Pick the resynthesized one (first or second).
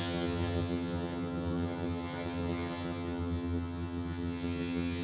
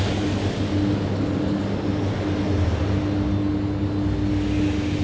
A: first